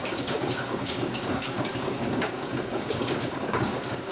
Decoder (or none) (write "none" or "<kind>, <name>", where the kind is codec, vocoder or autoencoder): codec, DAC